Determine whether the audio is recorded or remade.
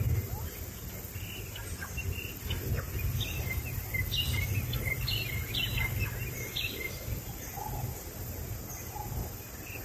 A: recorded